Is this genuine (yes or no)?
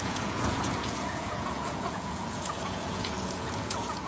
no